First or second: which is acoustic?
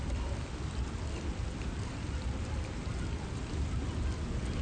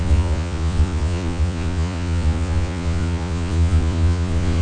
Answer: first